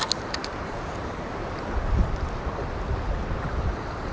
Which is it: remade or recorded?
recorded